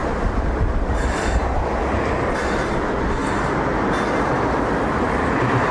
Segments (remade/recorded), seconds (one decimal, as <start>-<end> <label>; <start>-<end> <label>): 0.0-5.7 recorded